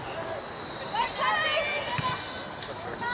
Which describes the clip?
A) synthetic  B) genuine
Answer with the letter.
B